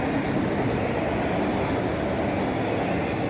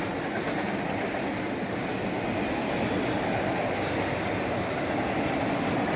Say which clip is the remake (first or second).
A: second